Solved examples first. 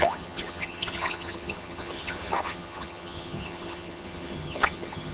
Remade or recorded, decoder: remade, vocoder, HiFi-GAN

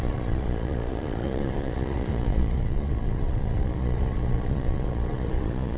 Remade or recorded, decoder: remade, vocoder, Vocos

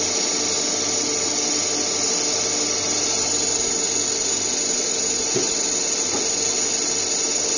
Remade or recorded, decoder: recorded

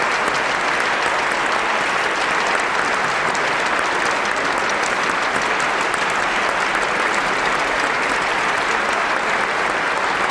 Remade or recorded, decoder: recorded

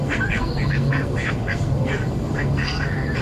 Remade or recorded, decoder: remade, codec, SNAC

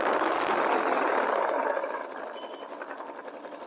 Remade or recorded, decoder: recorded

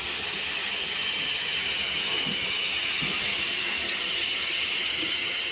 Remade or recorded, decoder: remade, vocoder, HiFi-GAN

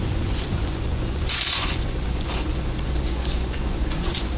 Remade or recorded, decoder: remade, vocoder, Vocos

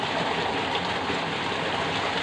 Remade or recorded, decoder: recorded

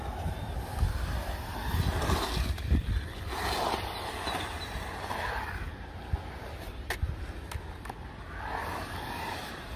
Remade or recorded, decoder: recorded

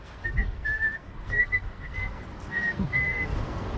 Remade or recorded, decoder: remade, codec, SNAC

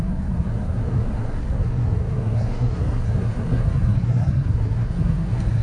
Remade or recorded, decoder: remade, codec, SNAC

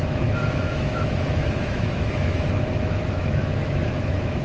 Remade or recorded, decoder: remade, autoencoder, DAC-VAE